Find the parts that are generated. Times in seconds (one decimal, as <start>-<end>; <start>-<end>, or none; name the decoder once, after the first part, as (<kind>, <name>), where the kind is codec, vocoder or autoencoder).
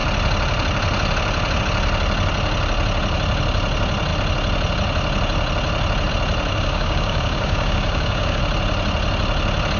6.5-8.4 (codec, DAC)